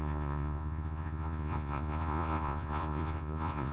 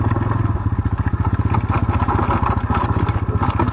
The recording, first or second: second